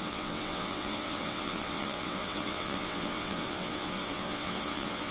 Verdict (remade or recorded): remade